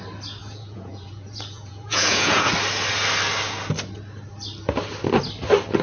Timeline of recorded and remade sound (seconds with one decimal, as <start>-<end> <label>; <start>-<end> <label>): 0.0-0.4 recorded; 0.4-2.5 remade; 2.5-5.8 recorded